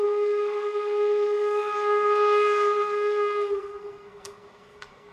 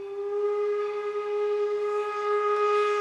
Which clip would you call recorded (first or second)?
second